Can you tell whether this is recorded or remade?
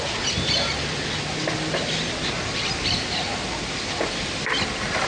recorded